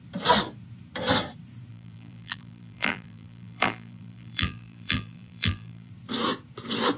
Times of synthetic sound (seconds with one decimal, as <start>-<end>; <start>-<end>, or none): 1.7-5.9